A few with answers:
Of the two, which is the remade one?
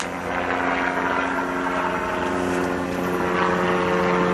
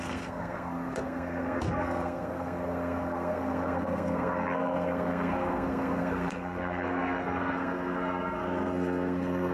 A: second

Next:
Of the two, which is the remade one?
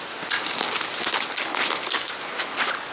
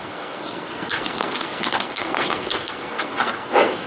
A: second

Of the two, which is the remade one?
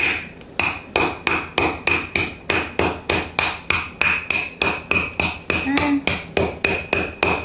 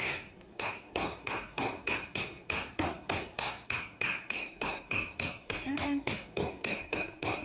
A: second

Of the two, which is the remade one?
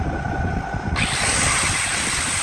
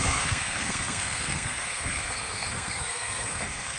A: second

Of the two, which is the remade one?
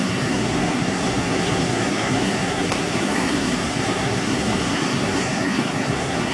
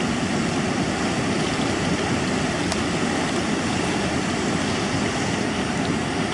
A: first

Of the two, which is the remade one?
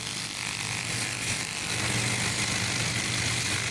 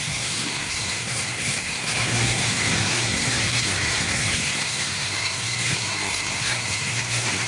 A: second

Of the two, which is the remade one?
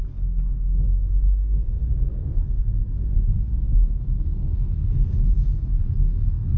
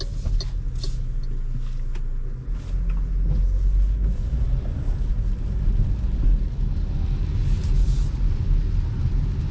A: first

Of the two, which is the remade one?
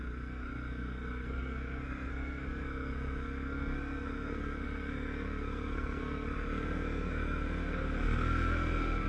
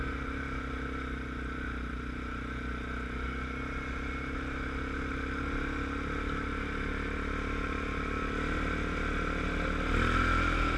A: first